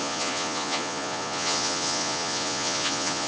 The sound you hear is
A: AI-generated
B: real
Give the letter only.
A